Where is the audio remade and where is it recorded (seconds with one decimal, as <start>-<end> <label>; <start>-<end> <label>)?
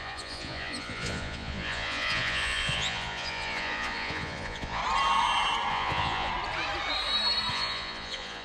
0.0-4.8 remade; 4.8-5.7 recorded; 5.7-6.3 remade; 6.3-7.5 recorded; 7.5-8.4 remade